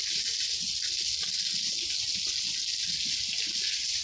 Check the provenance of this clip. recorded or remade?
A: recorded